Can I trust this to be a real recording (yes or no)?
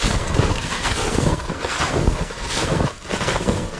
no